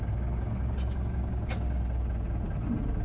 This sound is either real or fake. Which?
real